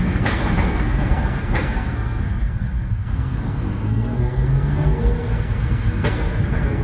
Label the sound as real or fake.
fake